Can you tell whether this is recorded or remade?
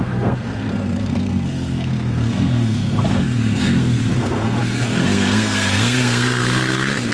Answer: remade